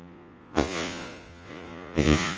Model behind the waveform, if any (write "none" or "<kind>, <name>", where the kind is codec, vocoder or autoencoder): vocoder, Vocos